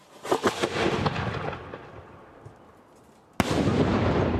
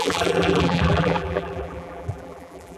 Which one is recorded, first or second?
first